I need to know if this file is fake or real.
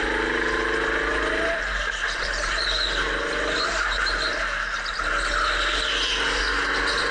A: real